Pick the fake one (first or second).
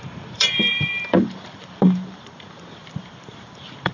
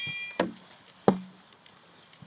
first